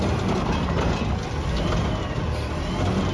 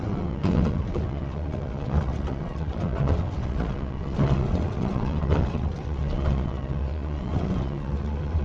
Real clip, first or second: first